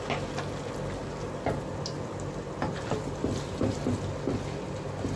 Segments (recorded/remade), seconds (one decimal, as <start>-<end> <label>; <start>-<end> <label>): 0.0-3.2 recorded; 3.2-3.9 remade; 3.9-5.2 recorded